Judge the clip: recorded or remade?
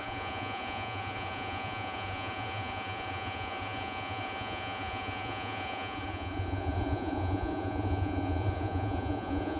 remade